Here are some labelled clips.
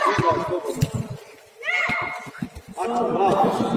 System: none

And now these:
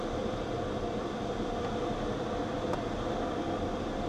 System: none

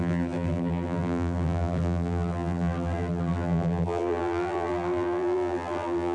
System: vocoder, BigVGAN v2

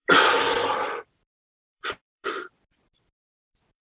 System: vocoder, BigVGAN v2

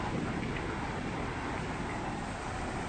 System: none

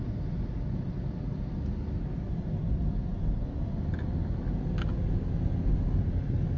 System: none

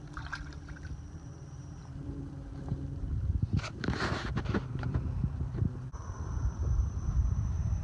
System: vocoder, BigVGAN v2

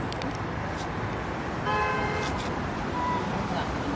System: vocoder, BigVGAN v2